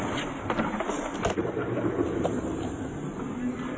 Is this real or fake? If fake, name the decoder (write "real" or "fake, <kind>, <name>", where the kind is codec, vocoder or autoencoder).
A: real